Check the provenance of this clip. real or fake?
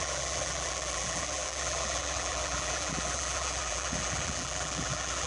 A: fake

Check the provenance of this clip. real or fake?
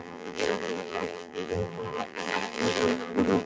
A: fake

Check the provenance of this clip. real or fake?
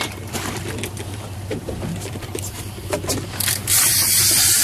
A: fake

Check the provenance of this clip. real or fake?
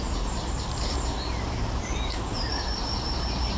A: fake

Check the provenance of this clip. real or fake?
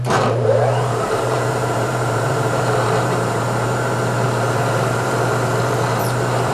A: fake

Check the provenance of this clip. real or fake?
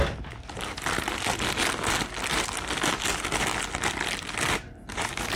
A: real